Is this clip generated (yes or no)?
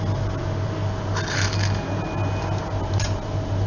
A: no